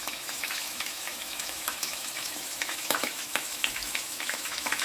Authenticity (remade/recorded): remade